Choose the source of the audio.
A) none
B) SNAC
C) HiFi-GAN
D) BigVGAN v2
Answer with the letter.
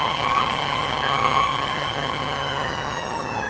C